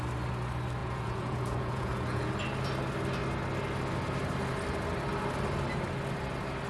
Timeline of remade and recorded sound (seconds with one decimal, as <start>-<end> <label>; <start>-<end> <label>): 0.0-0.8 recorded; 0.8-2.3 remade; 2.3-6.7 recorded

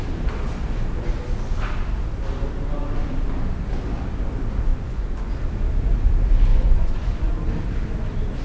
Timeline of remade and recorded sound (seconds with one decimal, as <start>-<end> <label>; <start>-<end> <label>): 0.0-4.7 recorded; 4.7-5.3 remade; 5.3-6.5 recorded; 6.5-7.3 remade; 7.3-8.4 recorded

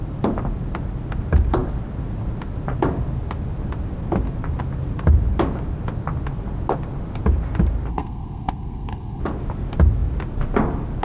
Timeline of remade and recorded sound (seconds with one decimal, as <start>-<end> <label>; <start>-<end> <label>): 0.0-7.9 recorded; 7.9-9.2 remade; 9.2-11.0 recorded

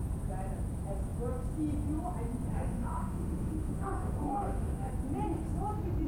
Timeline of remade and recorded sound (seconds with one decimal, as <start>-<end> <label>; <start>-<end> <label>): 0.0-2.5 recorded; 2.5-4.9 remade; 4.9-6.1 recorded

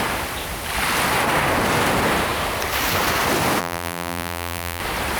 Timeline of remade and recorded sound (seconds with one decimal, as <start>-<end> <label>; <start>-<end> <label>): 0.0-3.6 recorded; 3.6-4.8 remade; 4.8-5.2 recorded

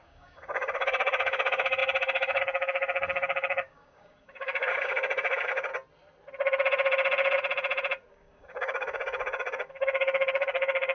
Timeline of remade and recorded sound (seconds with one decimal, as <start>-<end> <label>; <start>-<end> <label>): 0.0-5.7 remade; 5.7-8.1 recorded; 8.1-10.9 remade

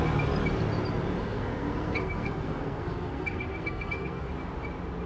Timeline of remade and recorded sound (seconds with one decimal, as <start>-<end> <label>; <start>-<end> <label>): 0.0-1.2 recorded; 1.2-4.3 remade; 4.3-5.1 recorded